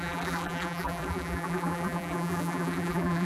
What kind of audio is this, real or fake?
fake